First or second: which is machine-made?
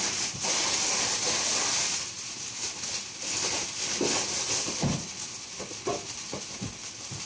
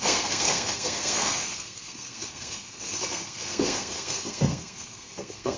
second